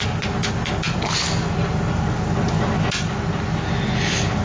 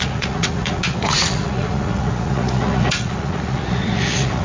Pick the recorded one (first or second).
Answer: first